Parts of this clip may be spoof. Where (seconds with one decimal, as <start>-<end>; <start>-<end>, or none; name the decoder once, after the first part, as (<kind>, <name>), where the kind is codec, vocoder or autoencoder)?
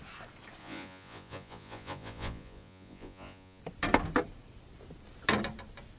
0.6-3.6 (vocoder, Vocos)